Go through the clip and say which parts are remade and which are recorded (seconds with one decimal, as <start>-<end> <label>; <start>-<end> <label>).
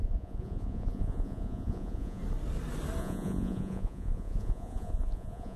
0.0-2.2 remade; 2.2-3.0 recorded; 3.0-5.6 remade